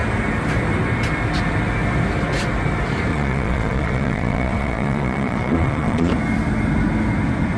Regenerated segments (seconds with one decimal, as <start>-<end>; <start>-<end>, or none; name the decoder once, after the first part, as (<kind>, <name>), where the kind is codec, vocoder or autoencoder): 3.1-6.1 (vocoder, Vocos)